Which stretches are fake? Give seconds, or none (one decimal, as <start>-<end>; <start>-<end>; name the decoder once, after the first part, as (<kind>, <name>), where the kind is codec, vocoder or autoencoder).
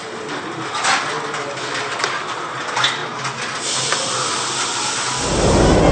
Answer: none